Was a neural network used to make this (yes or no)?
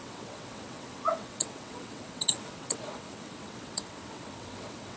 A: yes